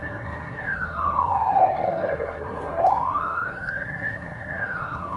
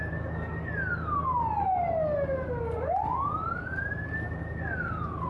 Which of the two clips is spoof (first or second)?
first